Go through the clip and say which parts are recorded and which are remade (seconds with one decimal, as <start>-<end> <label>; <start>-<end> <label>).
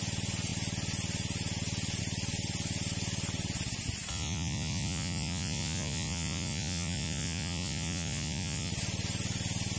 0.0-4.1 recorded; 4.1-8.7 remade; 8.7-9.8 recorded